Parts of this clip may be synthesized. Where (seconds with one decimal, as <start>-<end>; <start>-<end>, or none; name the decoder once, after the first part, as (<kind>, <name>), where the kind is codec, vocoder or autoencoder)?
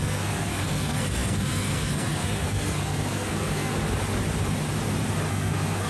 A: 0.0-3.7 (codec, SNAC); 5.3-5.9